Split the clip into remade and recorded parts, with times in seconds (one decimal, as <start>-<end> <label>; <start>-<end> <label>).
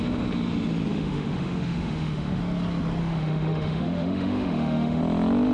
0.0-0.9 recorded; 0.9-2.4 remade; 2.4-3.0 recorded; 3.0-5.0 remade; 5.0-5.5 recorded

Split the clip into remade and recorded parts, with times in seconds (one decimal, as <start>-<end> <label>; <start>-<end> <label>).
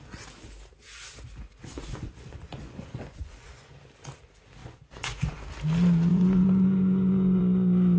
0.0-1.7 recorded; 1.7-3.7 remade; 3.7-4.6 recorded; 4.6-5.4 remade; 5.4-6.1 recorded; 6.1-7.4 remade; 7.4-8.0 recorded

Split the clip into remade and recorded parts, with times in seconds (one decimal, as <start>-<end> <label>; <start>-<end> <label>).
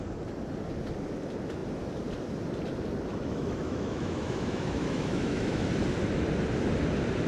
0.0-3.1 recorded; 3.1-5.7 remade; 5.7-7.3 recorded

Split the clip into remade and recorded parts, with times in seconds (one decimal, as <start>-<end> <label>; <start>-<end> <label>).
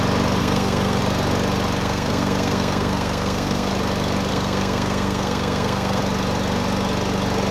0.0-0.4 recorded; 0.4-1.0 remade; 1.0-1.8 recorded; 1.8-3.7 remade; 3.7-4.3 recorded; 4.3-6.0 remade; 6.0-7.5 recorded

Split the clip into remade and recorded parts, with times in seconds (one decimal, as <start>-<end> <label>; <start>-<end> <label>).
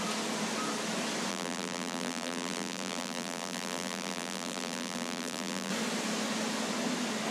0.0-1.3 recorded; 1.3-5.7 remade; 5.7-7.3 recorded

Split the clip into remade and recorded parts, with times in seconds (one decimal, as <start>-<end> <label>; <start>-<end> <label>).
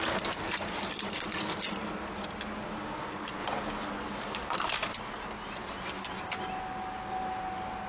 0.0-7.9 recorded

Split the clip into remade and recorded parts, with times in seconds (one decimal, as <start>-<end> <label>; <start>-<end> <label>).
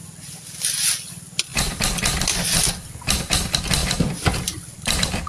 0.0-1.5 remade; 1.5-2.7 recorded; 2.7-3.8 remade; 3.8-4.6 recorded; 4.6-5.3 remade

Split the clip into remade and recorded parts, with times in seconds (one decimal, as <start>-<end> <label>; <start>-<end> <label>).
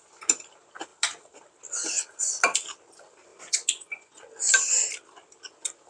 0.0-3.3 recorded; 3.3-4.2 remade; 4.2-5.9 recorded